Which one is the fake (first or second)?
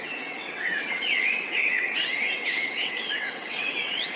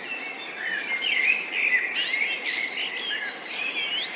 first